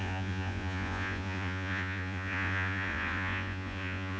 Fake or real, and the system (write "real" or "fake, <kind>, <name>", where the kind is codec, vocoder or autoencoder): fake, vocoder, Vocos